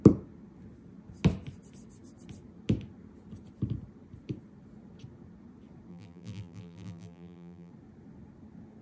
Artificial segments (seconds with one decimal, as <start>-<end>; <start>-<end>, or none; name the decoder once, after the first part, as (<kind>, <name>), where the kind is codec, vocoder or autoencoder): 5.9-7.7 (vocoder, BigVGAN v2)